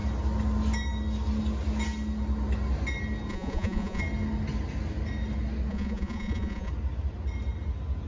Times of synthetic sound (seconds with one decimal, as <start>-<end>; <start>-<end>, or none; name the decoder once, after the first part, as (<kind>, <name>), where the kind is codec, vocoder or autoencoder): 3.3-4.0 (vocoder, Vocos); 5.7-6.7